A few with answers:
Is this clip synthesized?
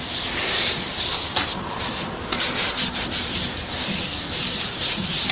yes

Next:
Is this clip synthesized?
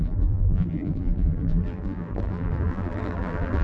yes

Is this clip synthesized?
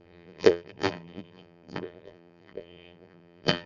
yes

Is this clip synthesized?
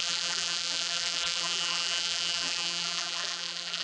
yes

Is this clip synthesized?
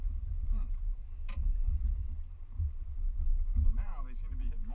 yes